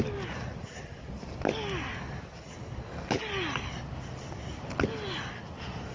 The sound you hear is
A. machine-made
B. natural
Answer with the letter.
B